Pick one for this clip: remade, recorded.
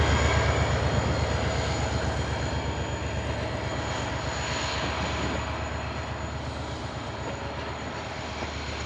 recorded